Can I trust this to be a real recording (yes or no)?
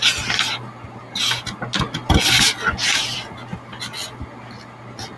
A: yes